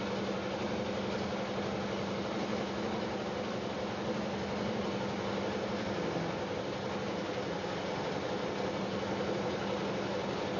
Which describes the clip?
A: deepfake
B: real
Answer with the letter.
B